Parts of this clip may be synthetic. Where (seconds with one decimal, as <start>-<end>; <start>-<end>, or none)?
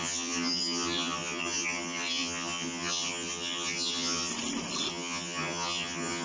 0.0-4.3; 4.9-6.2